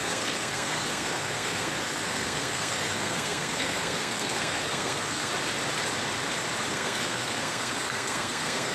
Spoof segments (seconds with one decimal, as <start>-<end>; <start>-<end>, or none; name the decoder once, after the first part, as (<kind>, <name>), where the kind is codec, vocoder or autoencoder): 0.0-5.3 (codec, SNAC); 6.7-8.7